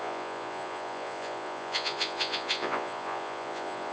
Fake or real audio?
fake